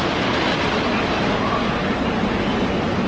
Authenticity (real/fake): real